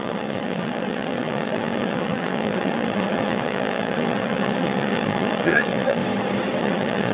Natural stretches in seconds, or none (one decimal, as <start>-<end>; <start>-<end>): 6.0-6.6